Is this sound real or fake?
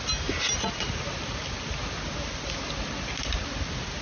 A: real